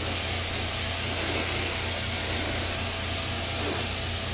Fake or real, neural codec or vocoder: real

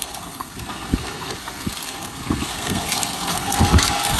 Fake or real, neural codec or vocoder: fake, codec, SNAC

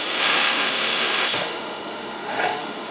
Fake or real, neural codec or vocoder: fake, autoencoder, DAC-VAE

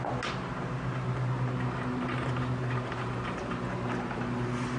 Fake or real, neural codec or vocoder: real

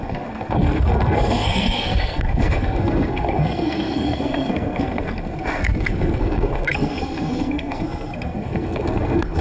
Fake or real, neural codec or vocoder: fake, codec, SNAC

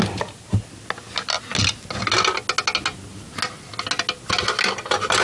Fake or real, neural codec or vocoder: real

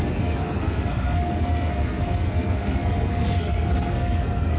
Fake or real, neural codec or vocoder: fake, codec, SNAC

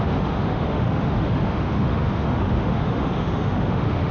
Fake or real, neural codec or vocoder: fake, autoencoder, DAC-VAE